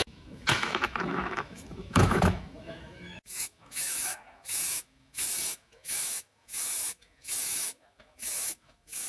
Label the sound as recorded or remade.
remade